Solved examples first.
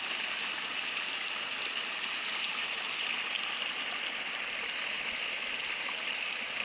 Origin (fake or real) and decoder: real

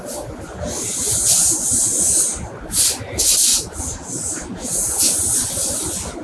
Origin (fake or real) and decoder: real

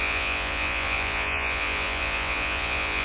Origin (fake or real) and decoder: fake, vocoder, Vocos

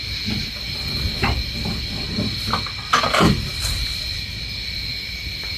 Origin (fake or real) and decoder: real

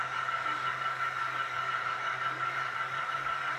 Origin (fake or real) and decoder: fake, codec, DAC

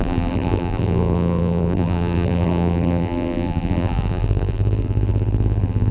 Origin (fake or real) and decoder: fake, vocoder, BigVGAN v2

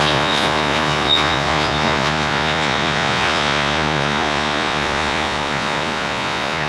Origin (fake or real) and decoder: fake, vocoder, Vocos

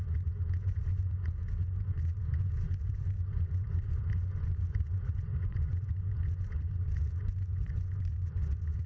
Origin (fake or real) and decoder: fake, vocoder, Vocos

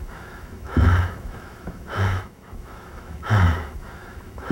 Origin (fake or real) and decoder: fake, autoencoder, DAC-VAE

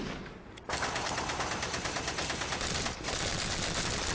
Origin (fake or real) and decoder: real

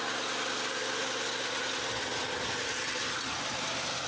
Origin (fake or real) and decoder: real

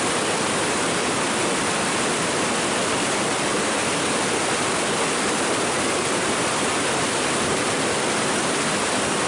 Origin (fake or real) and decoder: real